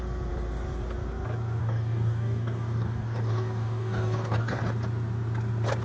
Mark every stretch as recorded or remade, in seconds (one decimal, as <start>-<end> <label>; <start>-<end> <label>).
0.0-1.6 recorded; 1.6-4.6 remade; 4.6-5.8 recorded